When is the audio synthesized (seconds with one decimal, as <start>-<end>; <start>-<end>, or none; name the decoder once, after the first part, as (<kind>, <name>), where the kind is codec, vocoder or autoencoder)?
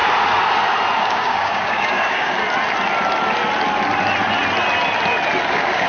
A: 1.0-2.4 (codec, DAC); 5.5-5.9